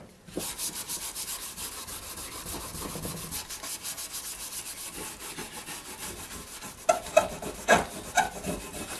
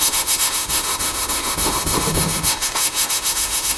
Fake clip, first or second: second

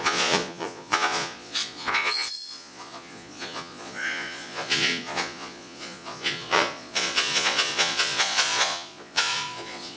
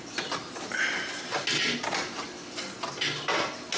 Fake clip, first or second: first